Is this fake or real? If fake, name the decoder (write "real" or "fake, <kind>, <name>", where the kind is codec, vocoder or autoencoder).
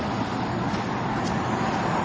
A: real